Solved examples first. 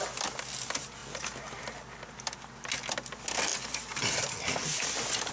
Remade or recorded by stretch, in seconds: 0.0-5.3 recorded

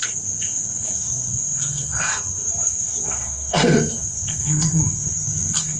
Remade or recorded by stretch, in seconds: 0.0-5.8 remade

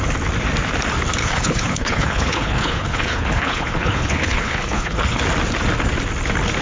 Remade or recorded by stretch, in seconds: 0.0-1.2 recorded; 1.2-5.2 remade; 5.2-6.6 recorded